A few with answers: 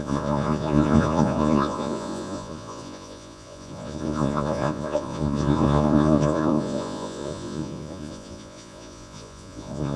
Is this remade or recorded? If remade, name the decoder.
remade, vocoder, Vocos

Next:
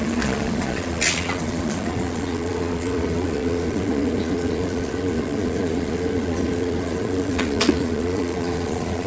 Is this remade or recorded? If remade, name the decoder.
remade, vocoder, Vocos